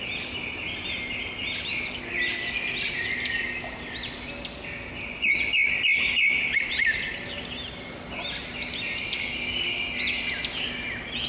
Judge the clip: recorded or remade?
recorded